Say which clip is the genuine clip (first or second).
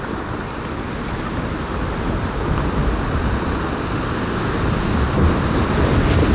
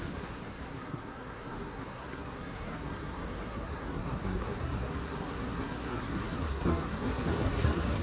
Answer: first